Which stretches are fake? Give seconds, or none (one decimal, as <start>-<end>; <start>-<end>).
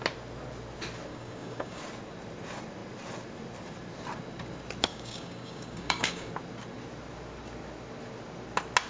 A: 1.1-1.8; 4.9-6.3